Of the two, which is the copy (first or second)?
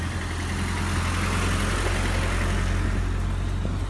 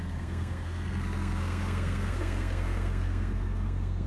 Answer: second